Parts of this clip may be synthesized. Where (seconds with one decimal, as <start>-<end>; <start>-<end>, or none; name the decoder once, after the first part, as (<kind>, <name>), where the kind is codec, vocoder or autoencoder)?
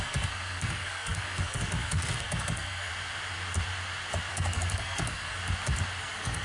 0.0-2.9 (codec, SNAC); 4.3-5.4; 6.0-6.4